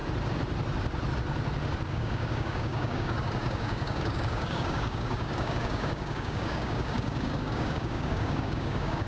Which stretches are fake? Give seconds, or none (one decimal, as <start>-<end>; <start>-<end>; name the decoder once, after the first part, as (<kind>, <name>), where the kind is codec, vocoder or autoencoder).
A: 1.9-9.1 (codec, DAC)